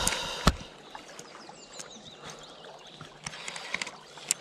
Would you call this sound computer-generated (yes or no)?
no